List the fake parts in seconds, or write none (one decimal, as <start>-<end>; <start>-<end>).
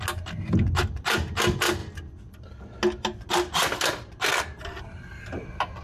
none